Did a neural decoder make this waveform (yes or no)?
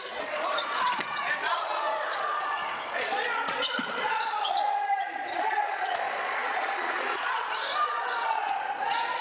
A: yes